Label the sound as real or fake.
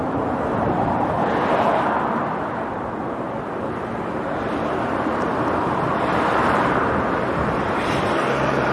fake